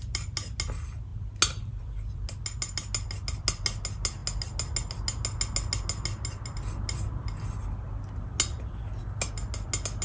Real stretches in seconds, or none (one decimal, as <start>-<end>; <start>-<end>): 0.0-10.0